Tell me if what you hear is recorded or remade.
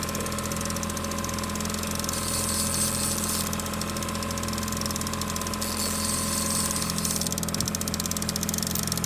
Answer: recorded